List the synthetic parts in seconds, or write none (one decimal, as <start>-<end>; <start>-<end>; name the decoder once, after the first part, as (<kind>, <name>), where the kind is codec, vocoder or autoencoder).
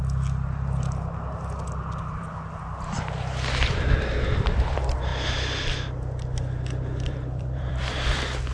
2.1-5.1 (vocoder, BigVGAN v2); 7.0-8.5